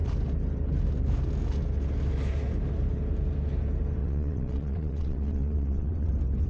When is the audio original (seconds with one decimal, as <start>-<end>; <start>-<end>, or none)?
0.0-4.0; 6.1-6.5